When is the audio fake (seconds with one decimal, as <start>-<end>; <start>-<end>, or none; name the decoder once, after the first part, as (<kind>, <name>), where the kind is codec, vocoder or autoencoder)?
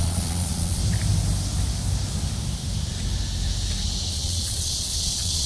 0.0-0.8 (vocoder, Vocos); 4.1-5.5